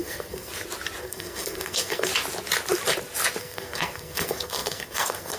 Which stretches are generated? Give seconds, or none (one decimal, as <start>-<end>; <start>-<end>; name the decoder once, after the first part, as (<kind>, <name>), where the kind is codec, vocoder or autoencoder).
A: 0.0-0.5 (codec, SNAC); 1.0-2.1; 3.4-5.4